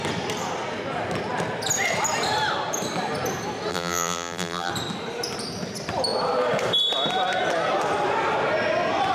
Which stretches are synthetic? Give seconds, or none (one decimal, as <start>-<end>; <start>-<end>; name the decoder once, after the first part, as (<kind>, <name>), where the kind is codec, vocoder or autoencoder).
3.7-4.7 (vocoder, BigVGAN v2)